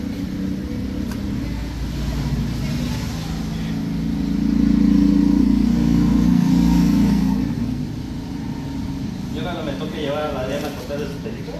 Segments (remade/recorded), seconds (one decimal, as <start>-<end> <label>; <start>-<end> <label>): 0.0-5.4 recorded; 5.4-7.8 remade; 7.8-11.6 recorded